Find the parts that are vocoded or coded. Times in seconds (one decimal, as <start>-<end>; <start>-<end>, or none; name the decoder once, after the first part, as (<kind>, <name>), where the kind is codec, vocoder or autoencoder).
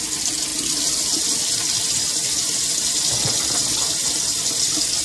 none